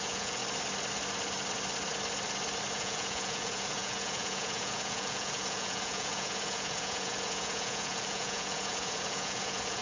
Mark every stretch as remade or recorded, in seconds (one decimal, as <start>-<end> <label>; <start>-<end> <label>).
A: 0.0-0.4 remade; 0.4-2.7 recorded; 2.7-9.8 remade